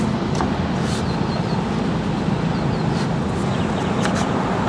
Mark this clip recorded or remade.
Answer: recorded